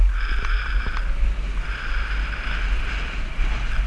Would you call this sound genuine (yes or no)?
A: yes